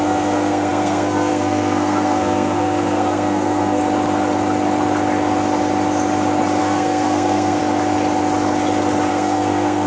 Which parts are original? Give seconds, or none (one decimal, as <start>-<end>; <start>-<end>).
3.8-6.6; 7.6-9.1